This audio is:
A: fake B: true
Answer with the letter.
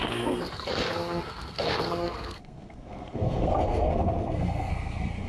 A